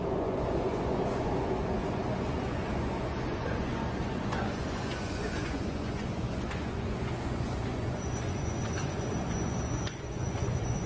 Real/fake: fake